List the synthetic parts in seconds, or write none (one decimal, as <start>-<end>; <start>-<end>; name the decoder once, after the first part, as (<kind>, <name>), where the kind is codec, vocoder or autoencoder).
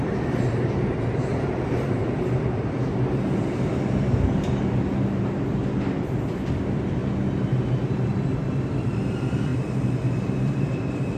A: 0.0-2.8 (vocoder, BigVGAN v2); 5.5-7.0; 7.9-11.2